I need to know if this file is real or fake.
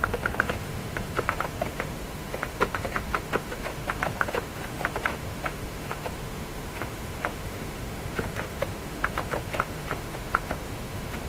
fake